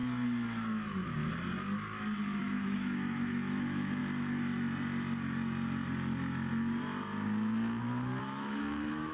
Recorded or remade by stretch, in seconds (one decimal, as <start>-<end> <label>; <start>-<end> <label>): 0.0-2.4 recorded; 2.4-4.0 remade; 4.0-8.2 recorded; 8.2-9.1 remade